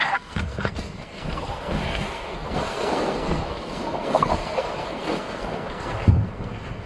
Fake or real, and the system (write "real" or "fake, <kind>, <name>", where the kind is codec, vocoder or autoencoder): fake, codec, SNAC